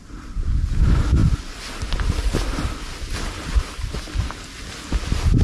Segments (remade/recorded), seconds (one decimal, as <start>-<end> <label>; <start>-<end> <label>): 0.0-5.4 recorded